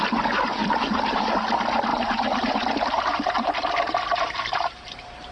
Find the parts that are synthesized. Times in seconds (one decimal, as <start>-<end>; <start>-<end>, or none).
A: 0.6-1.2; 1.9-5.3